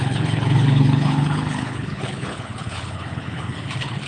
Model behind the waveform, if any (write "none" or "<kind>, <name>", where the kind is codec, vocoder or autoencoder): codec, HILCodec